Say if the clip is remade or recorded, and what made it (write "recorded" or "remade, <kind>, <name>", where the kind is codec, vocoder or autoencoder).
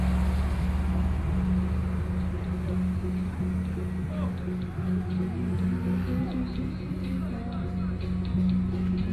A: recorded